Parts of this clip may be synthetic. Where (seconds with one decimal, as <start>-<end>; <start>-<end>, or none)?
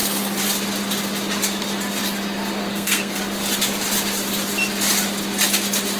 2.6-3.2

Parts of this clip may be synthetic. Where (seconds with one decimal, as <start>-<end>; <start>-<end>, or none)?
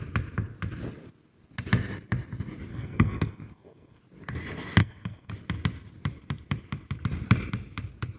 2.7-4.0; 4.8-5.3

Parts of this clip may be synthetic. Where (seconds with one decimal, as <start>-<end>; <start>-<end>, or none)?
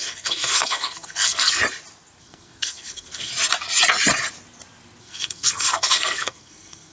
0.0-1.6; 2.2-3.3; 5.0-6.9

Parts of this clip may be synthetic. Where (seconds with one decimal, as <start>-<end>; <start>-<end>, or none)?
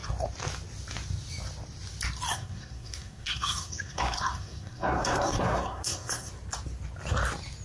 2.3-6.3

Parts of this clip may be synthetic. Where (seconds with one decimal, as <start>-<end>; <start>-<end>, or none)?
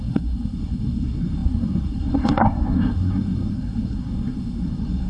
0.0-5.1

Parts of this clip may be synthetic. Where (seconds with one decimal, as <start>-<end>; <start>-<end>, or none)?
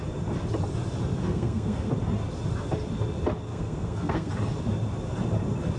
1.2-1.9; 3.5-4.3